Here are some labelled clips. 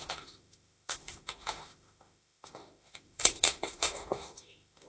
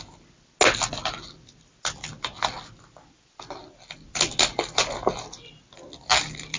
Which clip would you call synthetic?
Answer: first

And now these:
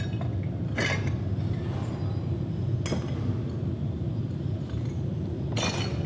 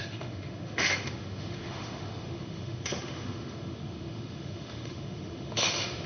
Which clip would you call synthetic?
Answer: second